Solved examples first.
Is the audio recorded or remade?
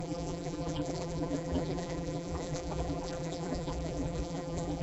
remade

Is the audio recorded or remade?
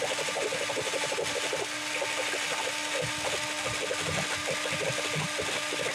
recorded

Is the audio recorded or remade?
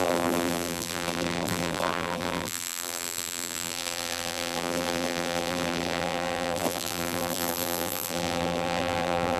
remade